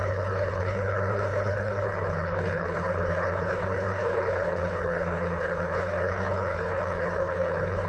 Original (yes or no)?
no